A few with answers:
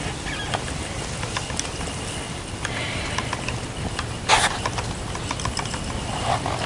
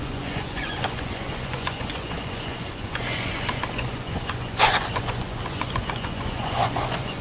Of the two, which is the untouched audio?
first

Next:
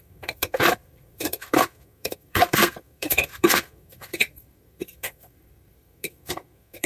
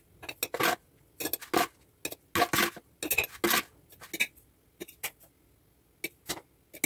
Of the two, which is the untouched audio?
second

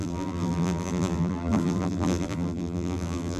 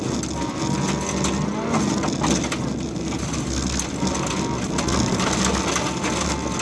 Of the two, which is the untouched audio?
second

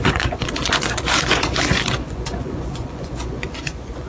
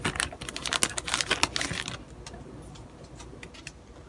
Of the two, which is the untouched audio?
second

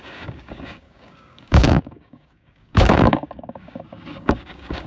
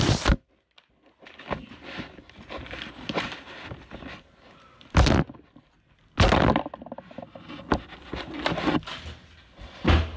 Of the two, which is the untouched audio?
second